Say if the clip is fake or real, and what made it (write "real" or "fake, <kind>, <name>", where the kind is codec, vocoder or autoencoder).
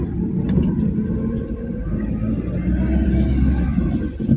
real